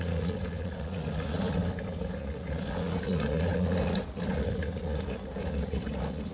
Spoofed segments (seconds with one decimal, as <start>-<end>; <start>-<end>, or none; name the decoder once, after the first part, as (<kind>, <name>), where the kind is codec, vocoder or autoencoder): 0.0-1.6 (vocoder, Vocos); 2.2-6.3